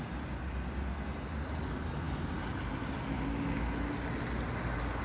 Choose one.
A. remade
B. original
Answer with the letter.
B